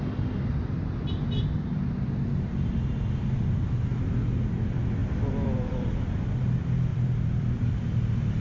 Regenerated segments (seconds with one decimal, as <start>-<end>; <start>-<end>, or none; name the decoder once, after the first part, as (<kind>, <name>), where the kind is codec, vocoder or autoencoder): 5.0-6.2 (vocoder, BigVGAN v2); 6.9-7.8